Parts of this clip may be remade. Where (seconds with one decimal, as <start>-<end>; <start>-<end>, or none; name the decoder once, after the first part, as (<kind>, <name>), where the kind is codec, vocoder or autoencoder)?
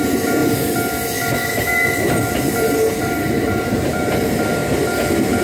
0.0-0.4 (vocoder, BigVGAN v2); 2.0-4.6